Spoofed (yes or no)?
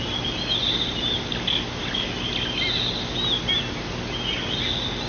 no